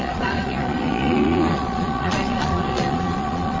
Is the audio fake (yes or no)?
yes